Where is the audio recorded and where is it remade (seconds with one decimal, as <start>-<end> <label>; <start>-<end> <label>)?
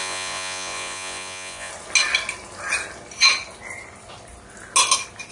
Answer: 0.0-1.7 remade; 1.7-5.3 recorded